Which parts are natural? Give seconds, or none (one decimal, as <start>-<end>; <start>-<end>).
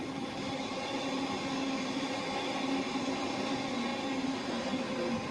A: 0.0-5.3